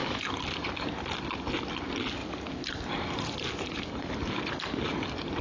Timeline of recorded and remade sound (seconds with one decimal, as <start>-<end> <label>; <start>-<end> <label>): 0.0-2.2 recorded; 2.2-4.1 remade; 4.1-5.4 recorded